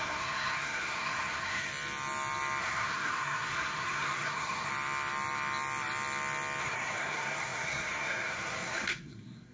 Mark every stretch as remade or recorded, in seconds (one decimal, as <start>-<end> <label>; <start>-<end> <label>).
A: 0.0-1.7 remade; 1.7-2.6 recorded; 2.6-4.7 remade; 4.7-6.6 recorded; 6.6-9.5 remade